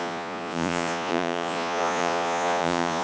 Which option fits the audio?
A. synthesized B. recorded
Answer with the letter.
A